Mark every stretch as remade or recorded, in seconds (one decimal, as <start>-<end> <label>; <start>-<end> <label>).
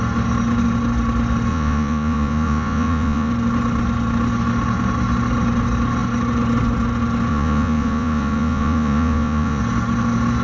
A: 0.0-1.5 recorded; 1.5-3.3 remade; 3.3-7.3 recorded; 7.3-9.6 remade; 9.6-10.4 recorded